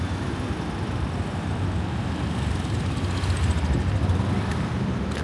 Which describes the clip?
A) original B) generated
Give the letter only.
A